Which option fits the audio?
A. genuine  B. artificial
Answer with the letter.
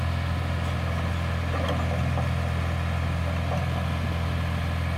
A